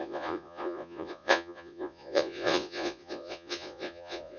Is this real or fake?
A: fake